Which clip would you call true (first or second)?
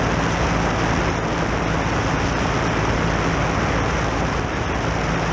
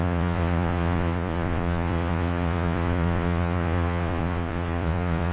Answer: first